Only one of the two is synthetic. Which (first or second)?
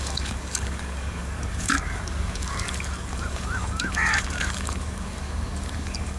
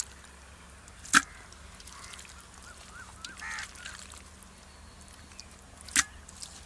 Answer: first